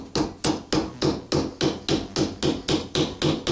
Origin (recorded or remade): recorded